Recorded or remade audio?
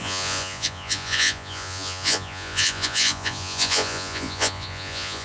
remade